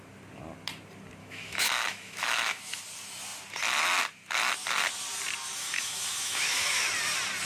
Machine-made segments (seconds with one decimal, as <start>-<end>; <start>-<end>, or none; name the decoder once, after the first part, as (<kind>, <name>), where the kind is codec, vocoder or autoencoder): 1.2-2.8 (autoencoder, DAC-VAE); 5.6-6.8